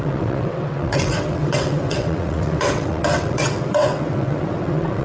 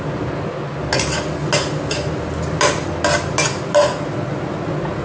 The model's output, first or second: first